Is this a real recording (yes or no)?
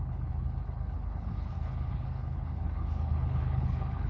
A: no